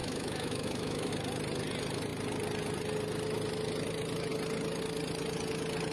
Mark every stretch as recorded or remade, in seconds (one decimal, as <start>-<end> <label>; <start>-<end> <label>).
0.0-1.1 remade; 1.1-5.9 recorded